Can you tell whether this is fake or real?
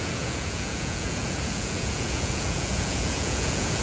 fake